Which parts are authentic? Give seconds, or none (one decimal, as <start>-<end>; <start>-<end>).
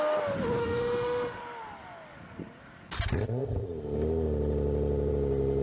0.0-0.6; 1.4-5.6